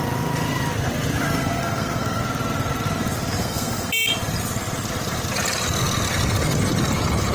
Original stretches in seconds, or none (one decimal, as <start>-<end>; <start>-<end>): 0.0-1.4; 2.2-3.4; 3.9-7.3